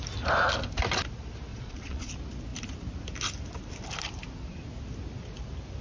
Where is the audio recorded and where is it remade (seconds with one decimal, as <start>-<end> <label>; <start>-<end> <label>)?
0.0-1.5 recorded; 1.5-2.1 remade; 2.1-5.8 recorded